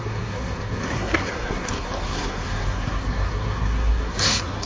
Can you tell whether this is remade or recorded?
remade